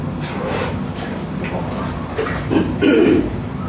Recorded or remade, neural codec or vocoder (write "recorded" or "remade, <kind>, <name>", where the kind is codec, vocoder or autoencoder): recorded